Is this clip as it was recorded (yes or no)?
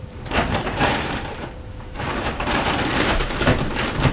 no